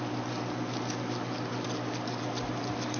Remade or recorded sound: recorded